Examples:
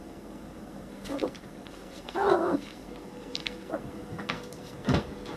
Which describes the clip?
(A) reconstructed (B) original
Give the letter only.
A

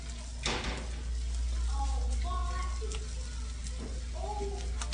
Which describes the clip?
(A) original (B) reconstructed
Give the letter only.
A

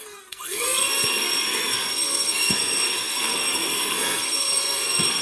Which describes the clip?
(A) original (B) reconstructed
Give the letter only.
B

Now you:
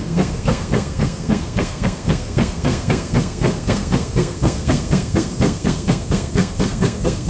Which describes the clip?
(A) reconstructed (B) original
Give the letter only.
A